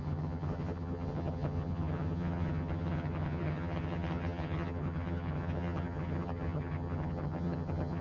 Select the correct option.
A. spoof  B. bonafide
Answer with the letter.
A